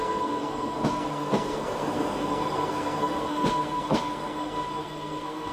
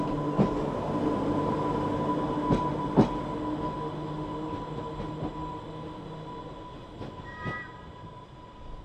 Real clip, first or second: second